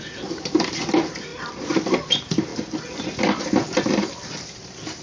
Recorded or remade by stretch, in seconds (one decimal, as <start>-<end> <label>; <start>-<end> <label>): 0.0-2.5 remade; 2.5-4.4 recorded; 4.4-5.0 remade